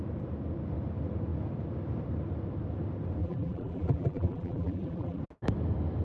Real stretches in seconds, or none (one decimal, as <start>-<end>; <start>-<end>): 0.0-3.2; 5.2-6.0